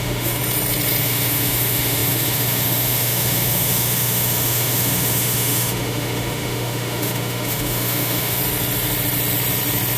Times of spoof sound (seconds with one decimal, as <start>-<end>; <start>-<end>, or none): 0.0-0.4; 1.0-8.4